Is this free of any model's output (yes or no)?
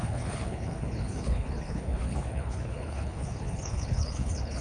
no